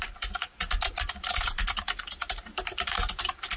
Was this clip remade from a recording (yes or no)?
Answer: no